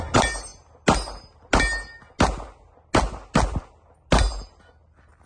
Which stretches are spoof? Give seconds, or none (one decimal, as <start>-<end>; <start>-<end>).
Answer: none